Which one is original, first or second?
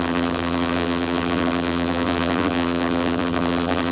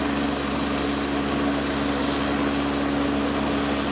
second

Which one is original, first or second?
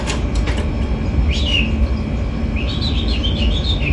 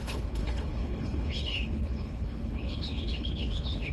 first